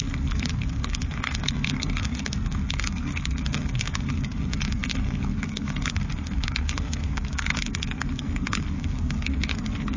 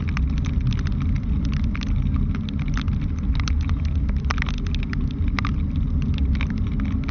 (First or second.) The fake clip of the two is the first